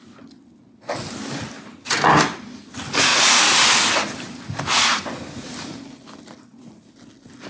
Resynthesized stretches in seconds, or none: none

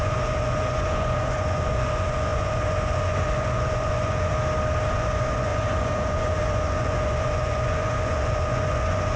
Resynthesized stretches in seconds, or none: 0.0-4.3 (vocoder, Vocos); 4.9-9.2

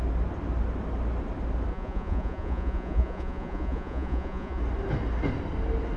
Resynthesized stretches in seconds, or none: 1.7-4.6 (vocoder, Vocos)

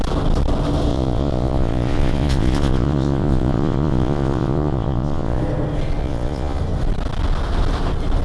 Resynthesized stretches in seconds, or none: 0.9-5.4 (vocoder, Vocos); 6.0-6.6

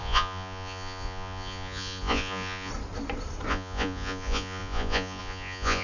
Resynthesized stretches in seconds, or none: 0.0-2.7 (vocoder, Vocos); 3.5-5.8

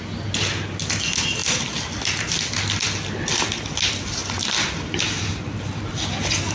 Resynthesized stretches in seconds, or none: 1.4-2.5 (vocoder, BigVGAN v2)

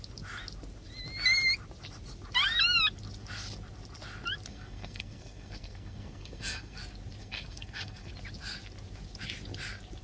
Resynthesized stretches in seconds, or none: 4.5-6.8 (codec, SNAC); 7.2-8.1